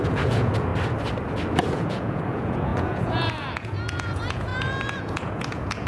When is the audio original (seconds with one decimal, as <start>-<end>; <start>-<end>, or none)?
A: 0.7-1.7